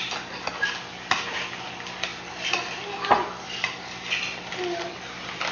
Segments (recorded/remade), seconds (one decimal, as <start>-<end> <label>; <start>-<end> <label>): 0.0-5.5 recorded